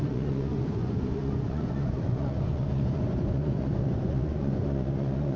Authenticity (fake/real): fake